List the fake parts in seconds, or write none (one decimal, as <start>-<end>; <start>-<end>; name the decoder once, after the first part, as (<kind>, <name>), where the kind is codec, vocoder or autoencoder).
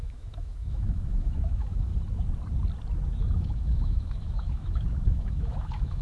0.0-1.9 (autoencoder, DAC-VAE); 3.2-6.0